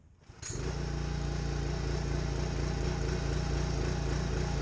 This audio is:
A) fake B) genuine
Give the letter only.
B